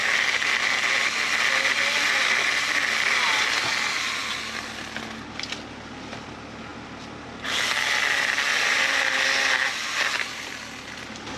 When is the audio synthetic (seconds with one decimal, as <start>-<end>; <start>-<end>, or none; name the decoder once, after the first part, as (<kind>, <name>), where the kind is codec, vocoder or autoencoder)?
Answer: none